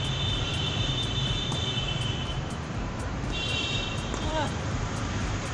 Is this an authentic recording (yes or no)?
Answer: no